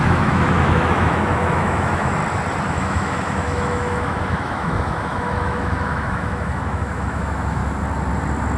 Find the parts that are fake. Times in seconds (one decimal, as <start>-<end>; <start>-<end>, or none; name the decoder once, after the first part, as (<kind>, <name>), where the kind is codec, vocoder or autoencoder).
0.0-2.2 (autoencoder, DAC-VAE); 2.7-7.6

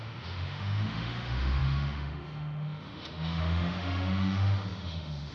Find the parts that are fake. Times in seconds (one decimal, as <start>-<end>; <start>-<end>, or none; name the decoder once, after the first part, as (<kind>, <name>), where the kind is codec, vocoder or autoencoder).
0.0-5.3 (autoencoder, DAC-VAE)

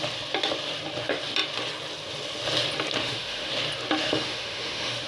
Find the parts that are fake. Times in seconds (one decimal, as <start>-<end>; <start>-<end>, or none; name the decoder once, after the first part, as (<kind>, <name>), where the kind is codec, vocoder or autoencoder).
3.0-3.5 (autoencoder, DAC-VAE); 4.0-5.1

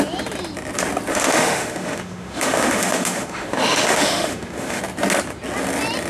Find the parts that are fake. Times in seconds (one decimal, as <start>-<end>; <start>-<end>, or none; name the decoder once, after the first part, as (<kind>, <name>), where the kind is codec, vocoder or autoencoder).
1.1-4.8 (autoencoder, DAC-VAE)

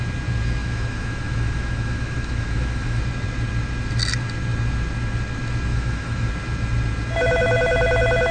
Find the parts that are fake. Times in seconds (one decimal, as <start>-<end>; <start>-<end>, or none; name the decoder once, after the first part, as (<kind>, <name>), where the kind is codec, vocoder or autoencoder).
0.6-3.0 (autoencoder, DAC-VAE); 5.7-6.3